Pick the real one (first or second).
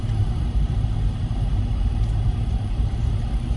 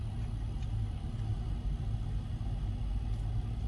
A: second